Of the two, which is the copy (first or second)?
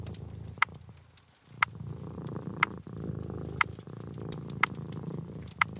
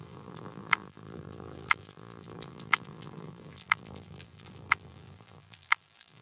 second